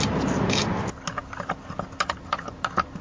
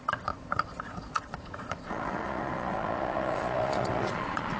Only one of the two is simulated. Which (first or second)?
second